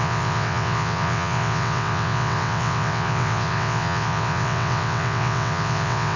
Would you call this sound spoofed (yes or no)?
yes